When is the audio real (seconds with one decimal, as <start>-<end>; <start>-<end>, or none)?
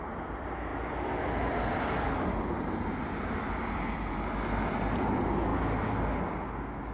0.0-6.9